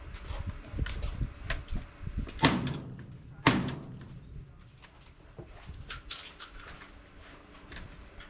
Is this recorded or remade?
recorded